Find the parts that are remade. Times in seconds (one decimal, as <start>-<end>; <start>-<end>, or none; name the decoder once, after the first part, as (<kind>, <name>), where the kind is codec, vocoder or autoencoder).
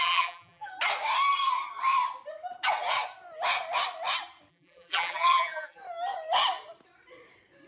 0.0-0.7 (vocoder, BigVGAN v2); 4.5-5.8